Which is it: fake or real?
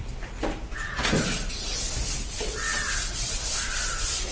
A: real